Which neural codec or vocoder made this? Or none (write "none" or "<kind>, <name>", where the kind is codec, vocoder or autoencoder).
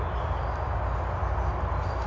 none